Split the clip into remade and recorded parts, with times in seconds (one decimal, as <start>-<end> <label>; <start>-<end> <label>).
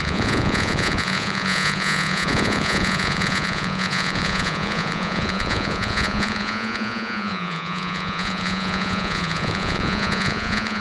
0.0-10.8 remade